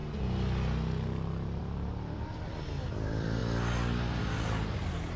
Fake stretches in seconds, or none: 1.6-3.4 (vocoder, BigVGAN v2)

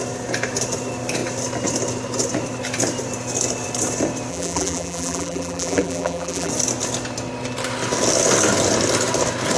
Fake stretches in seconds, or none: 4.3-6.5 (vocoder, BigVGAN v2)

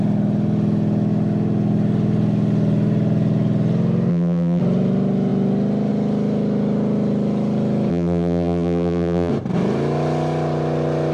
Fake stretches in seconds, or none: 4.1-4.6 (vocoder, BigVGAN v2); 7.9-9.3

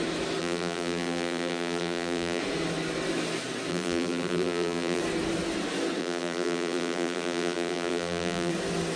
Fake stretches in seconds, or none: 0.4-2.4 (vocoder, BigVGAN v2); 3.7-5.0; 6.0-8.5

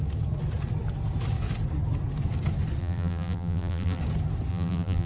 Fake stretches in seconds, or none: 2.8-4.0 (vocoder, BigVGAN v2); 4.5-5.1